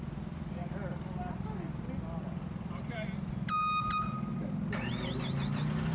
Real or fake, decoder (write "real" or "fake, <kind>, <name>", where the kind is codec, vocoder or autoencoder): real